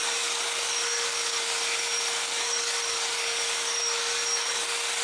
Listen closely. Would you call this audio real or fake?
fake